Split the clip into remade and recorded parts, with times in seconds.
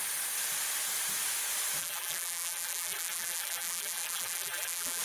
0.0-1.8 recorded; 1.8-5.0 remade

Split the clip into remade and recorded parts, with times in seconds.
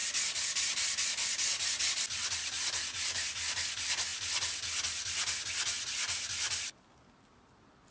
0.0-7.9 recorded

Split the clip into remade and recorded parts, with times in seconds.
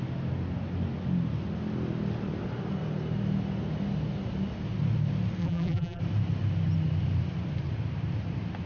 0.0-5.4 recorded; 5.4-6.0 remade; 6.0-8.7 recorded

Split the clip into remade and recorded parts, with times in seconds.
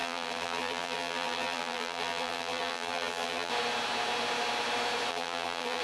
0.0-3.5 remade; 3.5-5.1 recorded; 5.1-5.8 remade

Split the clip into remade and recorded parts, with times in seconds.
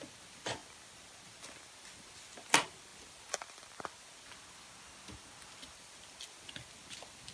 0.0-7.3 recorded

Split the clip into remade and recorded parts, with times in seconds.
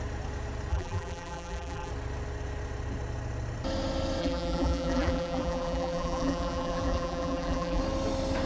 0.0-0.7 recorded; 0.7-1.9 remade; 1.9-4.2 recorded; 4.2-7.8 remade; 7.8-8.5 recorded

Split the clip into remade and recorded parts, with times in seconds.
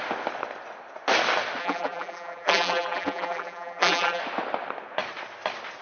0.0-1.6 recorded; 1.6-4.2 remade; 4.2-5.8 recorded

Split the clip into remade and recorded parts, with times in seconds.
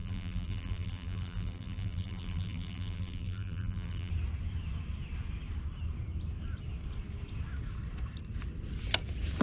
0.0-4.1 remade; 4.1-9.4 recorded